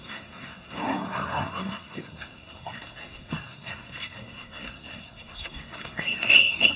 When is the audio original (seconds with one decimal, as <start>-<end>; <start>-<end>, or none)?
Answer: none